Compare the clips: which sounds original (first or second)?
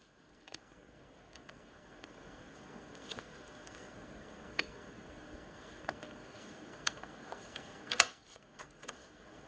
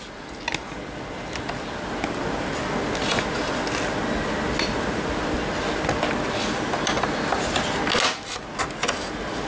second